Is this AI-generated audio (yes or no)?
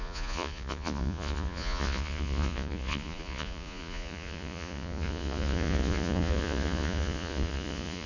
yes